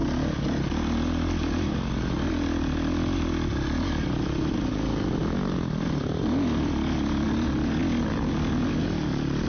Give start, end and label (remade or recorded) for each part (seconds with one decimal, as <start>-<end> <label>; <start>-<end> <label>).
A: 0.0-9.5 recorded